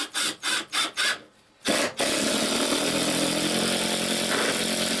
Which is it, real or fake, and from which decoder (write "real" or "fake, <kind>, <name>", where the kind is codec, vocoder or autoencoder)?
real